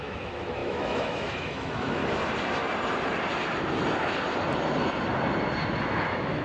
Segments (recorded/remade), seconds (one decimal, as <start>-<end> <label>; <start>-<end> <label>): 0.0-2.0 remade; 2.0-5.8 recorded; 5.8-6.4 remade